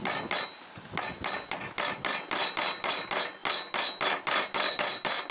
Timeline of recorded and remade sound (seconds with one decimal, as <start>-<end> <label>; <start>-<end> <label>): 0.0-5.3 recorded